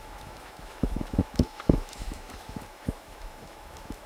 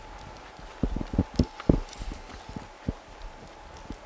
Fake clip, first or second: first